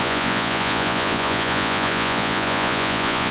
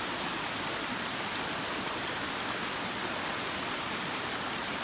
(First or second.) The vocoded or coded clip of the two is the first